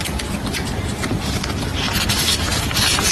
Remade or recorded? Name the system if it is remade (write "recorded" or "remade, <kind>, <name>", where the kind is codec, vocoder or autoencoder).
recorded